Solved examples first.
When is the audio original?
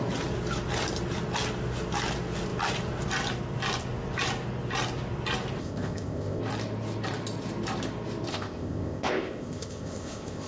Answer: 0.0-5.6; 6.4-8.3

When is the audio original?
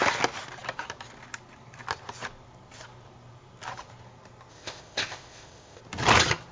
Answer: 0.0-4.5; 5.8-6.5